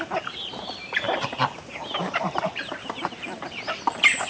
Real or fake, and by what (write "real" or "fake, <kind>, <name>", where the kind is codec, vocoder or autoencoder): fake, vocoder, BigVGAN v2